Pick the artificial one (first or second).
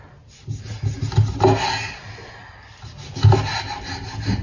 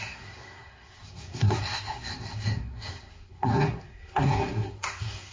second